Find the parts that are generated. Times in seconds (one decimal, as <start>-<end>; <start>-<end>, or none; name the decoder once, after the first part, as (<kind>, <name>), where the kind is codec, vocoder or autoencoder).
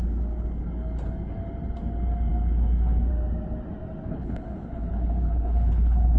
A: 4.1-6.2 (codec, HILCodec)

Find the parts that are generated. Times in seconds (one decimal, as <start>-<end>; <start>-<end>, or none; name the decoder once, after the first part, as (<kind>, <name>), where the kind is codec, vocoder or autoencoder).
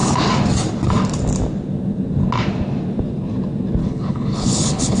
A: 3.8-5.0 (codec, HILCodec)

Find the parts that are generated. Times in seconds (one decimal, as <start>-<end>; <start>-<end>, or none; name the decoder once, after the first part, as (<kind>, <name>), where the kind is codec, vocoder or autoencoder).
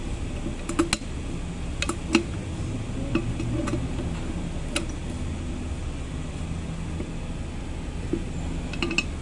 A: none